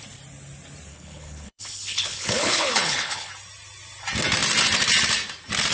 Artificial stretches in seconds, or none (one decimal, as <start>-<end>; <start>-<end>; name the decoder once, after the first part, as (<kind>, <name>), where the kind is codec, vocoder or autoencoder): 0.9-3.3 (codec, HILCodec)

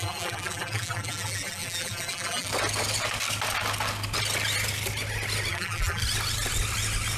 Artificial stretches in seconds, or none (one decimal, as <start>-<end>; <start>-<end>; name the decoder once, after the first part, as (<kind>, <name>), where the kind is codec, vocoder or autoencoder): 0.0-2.5 (vocoder, BigVGAN v2); 5.5-6.0

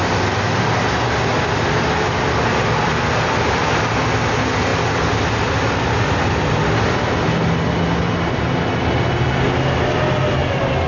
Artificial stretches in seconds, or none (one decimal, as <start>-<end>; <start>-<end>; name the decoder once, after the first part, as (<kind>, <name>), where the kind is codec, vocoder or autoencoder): none

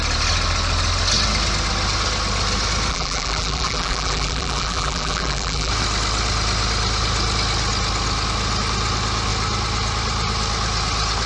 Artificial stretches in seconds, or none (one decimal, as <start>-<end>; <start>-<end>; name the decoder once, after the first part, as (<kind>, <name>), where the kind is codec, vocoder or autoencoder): 2.9-5.7 (vocoder, BigVGAN v2)